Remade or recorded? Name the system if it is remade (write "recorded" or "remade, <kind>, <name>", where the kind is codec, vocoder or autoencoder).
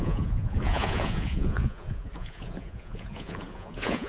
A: remade, vocoder, Vocos